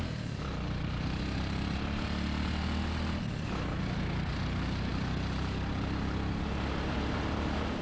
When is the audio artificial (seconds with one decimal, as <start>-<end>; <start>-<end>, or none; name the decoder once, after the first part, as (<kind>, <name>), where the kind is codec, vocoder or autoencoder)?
none

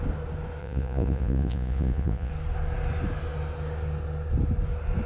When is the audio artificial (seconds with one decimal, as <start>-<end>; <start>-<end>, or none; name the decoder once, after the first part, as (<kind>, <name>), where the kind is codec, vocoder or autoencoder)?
0.6-2.3 (vocoder, Vocos)